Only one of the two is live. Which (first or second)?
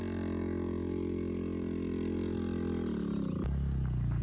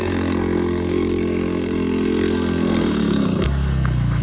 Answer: first